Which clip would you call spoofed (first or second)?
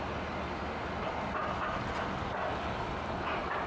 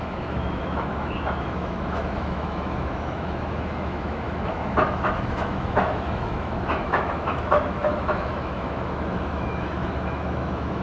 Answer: second